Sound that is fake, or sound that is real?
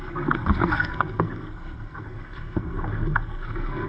fake